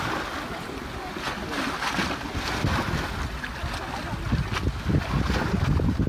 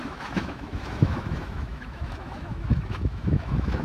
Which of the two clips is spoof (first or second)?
second